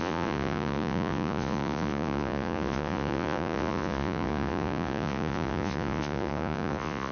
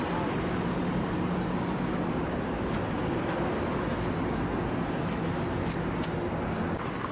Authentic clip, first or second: second